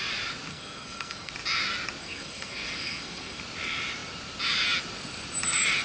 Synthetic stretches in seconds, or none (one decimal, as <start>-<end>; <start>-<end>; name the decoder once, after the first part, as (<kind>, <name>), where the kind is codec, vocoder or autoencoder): 0.5-1.3 (codec, SNAC); 2.0-3.4